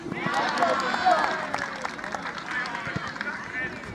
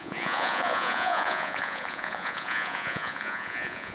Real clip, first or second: first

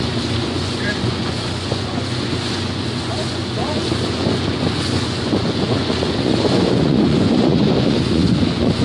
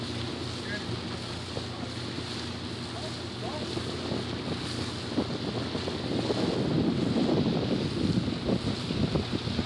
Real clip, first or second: second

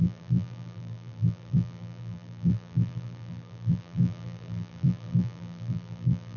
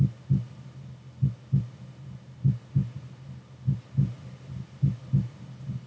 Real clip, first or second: second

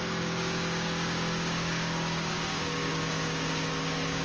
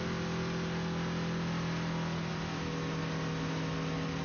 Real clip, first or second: second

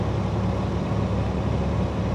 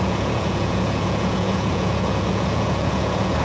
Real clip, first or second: first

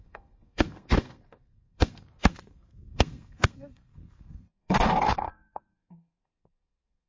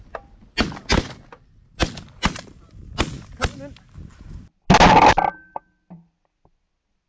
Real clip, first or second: second